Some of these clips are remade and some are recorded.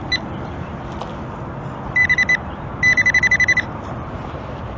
recorded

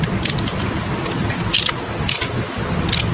recorded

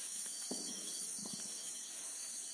remade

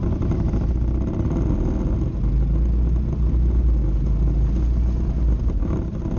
recorded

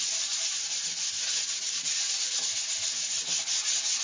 recorded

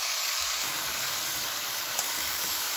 remade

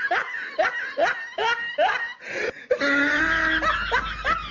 recorded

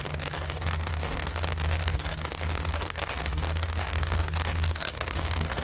remade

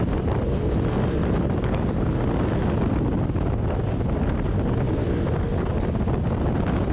recorded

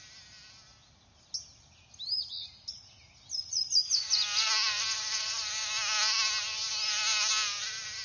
recorded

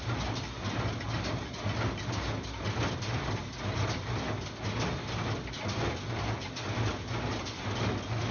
recorded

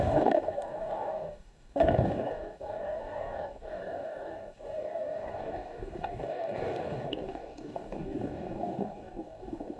remade